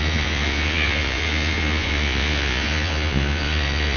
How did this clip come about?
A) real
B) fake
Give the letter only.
B